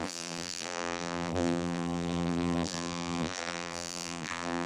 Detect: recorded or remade remade